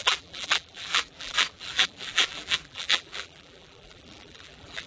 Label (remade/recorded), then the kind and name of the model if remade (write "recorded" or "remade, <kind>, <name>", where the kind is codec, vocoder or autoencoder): remade, vocoder, BigVGAN v2